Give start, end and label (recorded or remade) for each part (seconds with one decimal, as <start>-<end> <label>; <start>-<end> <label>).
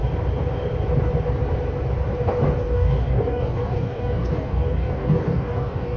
0.0-2.6 recorded; 2.6-6.0 remade